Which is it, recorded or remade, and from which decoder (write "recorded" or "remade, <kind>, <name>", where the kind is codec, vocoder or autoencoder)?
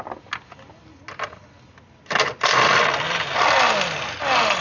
recorded